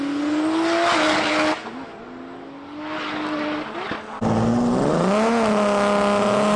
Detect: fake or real real